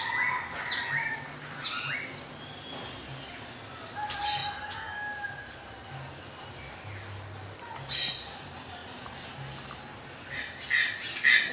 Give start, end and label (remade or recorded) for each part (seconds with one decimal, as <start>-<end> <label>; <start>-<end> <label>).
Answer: 0.0-11.5 recorded